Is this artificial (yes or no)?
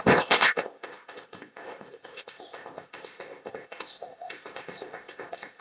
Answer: yes